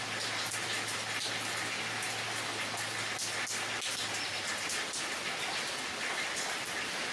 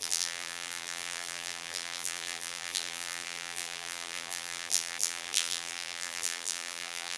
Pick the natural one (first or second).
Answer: first